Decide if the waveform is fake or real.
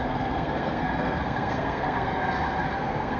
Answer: fake